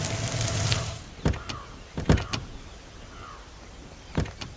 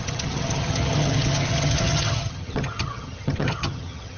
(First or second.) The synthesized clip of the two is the second